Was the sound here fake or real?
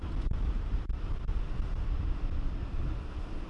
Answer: real